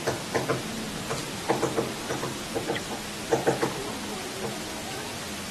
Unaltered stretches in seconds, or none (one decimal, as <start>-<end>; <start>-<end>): 0.0-5.5